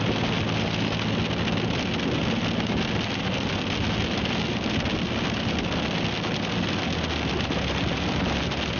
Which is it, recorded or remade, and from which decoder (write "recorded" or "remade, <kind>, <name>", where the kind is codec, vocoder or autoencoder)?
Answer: recorded